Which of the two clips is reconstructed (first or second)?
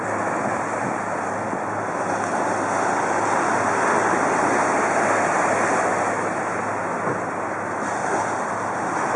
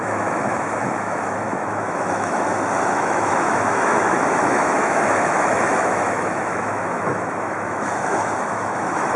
second